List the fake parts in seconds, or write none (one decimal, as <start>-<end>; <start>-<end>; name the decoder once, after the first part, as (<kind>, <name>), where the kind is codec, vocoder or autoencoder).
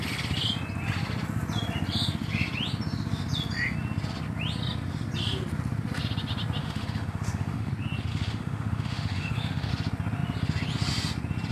6.6-7.7 (autoencoder, DAC-VAE); 8.1-9.7